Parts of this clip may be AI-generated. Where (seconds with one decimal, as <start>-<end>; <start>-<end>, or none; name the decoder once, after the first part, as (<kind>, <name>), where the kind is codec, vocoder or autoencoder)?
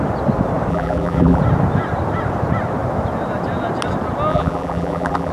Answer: 0.7-1.4 (vocoder, BigVGAN v2); 4.3-5.3